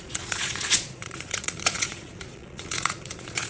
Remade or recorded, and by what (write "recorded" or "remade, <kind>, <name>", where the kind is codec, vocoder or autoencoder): remade, vocoder, Vocos